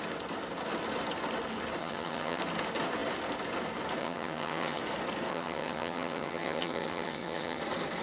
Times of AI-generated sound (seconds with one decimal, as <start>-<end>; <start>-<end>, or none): 1.8-2.4; 4.0-4.8; 5.3-7.6

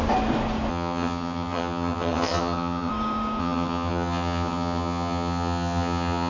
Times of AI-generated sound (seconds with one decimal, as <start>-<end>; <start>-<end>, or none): 0.7-2.9; 3.4-6.3